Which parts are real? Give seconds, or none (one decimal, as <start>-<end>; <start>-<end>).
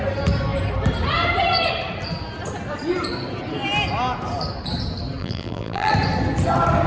0.0-5.2; 5.9-6.9